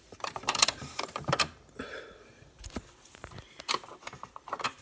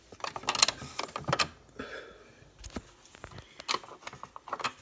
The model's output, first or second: first